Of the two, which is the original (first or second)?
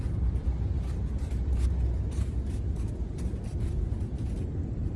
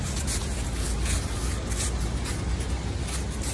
second